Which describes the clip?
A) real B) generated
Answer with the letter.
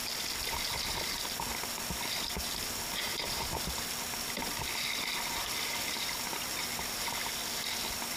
A